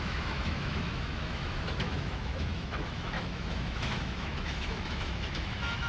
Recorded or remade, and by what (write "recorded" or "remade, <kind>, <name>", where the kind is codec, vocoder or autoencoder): remade, autoencoder, DAC-VAE